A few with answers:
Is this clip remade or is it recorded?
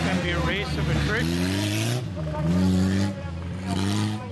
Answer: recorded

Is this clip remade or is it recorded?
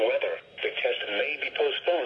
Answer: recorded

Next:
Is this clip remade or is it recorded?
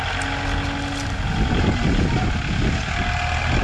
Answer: recorded